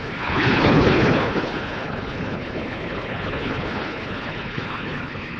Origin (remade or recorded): remade